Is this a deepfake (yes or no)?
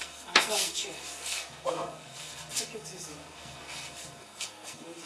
yes